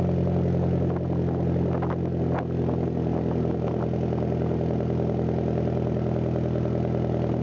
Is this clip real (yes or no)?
yes